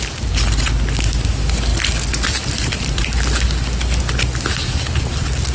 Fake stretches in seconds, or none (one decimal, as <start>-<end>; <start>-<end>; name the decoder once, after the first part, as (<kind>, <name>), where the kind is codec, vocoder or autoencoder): none